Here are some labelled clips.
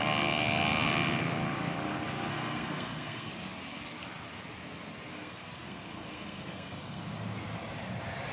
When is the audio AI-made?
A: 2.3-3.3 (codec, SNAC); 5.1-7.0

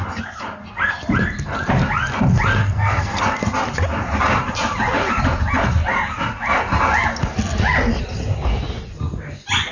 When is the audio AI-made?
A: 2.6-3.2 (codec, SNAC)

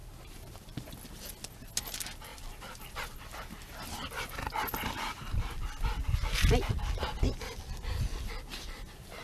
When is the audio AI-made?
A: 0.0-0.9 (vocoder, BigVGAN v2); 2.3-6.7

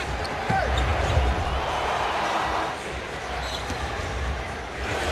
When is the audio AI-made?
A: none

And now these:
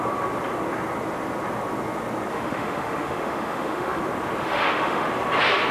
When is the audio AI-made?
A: 2.3-4.0 (autoencoder, DAC-VAE); 4.4-5.1

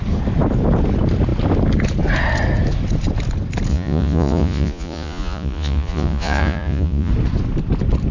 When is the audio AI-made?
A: 3.7-7.1 (vocoder, Vocos)

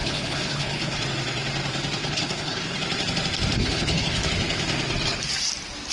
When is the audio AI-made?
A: 0.0-1.0 (codec, HILCodec); 2.0-2.8; 3.6-4.3

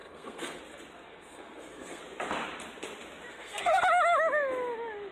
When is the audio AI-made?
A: 0.0-0.6 (codec, SNAC); 1.1-2.0; 3.3-3.8